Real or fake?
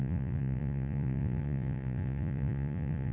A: fake